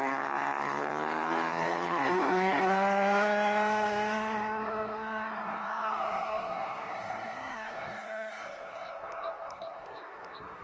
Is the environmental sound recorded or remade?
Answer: remade